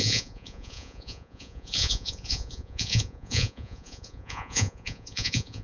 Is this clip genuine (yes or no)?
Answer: no